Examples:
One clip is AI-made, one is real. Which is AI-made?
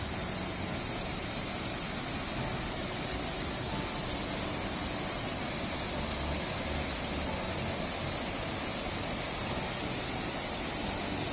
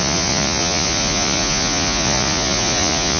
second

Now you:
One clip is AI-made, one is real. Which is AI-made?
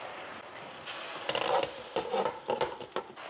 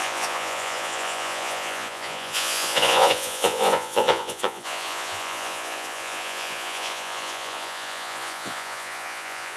second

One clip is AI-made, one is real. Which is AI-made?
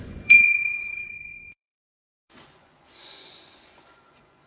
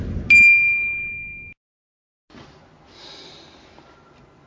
first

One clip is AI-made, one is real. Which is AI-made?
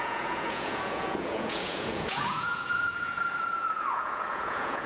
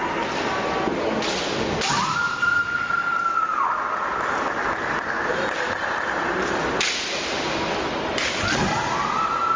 first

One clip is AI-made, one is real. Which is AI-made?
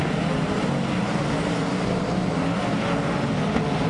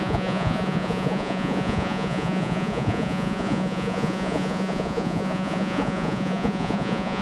second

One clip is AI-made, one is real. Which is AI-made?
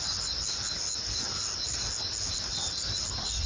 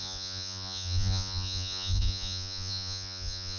second